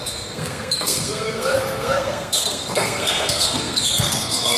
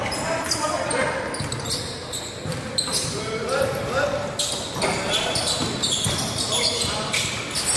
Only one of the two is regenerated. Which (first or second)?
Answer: first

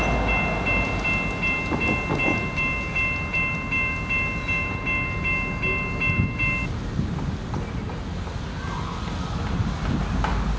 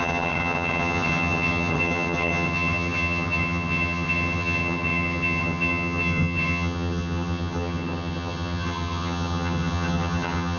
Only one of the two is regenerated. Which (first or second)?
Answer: second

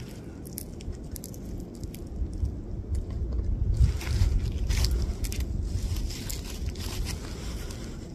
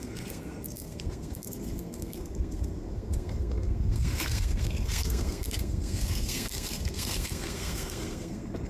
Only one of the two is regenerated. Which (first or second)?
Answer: second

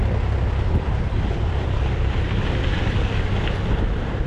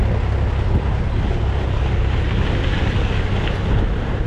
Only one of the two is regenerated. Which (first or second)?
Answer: first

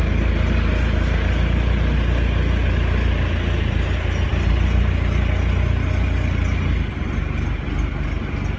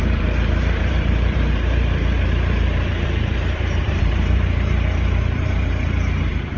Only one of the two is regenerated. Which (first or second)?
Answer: second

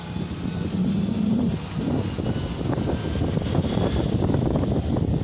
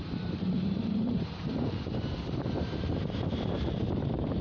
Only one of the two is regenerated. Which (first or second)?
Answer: second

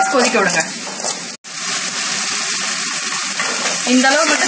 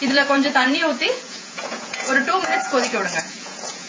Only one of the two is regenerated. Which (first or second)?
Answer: second